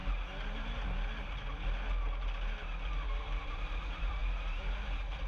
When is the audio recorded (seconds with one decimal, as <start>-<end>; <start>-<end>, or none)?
0.0-3.2